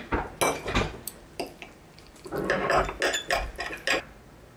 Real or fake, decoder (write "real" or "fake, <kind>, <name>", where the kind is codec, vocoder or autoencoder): real